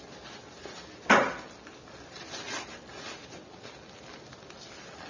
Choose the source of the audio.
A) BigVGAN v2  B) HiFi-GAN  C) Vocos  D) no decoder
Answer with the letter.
D